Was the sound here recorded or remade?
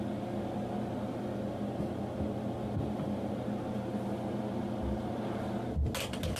recorded